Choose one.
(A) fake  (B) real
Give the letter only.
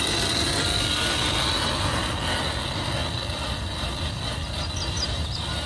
B